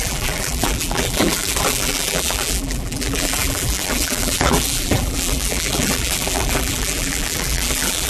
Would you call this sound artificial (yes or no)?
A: yes